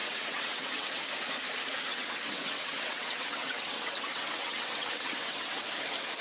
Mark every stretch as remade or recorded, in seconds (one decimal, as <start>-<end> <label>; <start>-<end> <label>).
0.0-1.0 remade; 1.0-1.9 recorded; 1.9-5.6 remade; 5.6-6.2 recorded